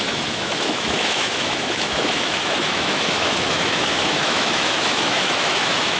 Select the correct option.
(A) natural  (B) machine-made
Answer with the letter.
B